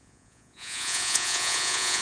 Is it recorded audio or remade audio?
remade